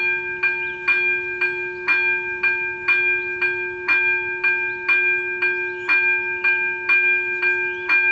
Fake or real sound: real